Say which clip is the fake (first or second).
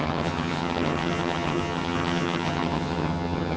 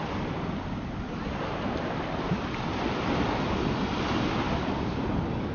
first